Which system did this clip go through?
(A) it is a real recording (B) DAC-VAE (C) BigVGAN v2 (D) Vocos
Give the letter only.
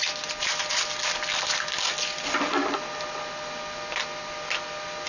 A